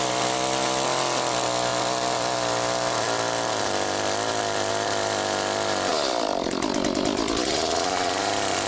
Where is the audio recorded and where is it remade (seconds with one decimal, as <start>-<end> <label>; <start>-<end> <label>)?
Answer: 0.0-1.7 recorded; 1.7-4.7 remade; 4.7-5.9 recorded; 5.9-7.5 remade; 7.5-8.7 recorded

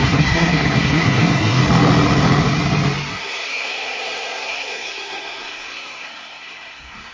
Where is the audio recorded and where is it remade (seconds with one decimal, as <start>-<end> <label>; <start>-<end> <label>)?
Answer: 0.0-1.6 remade; 1.6-3.1 recorded; 3.1-7.1 remade